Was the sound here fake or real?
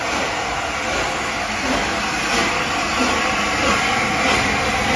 real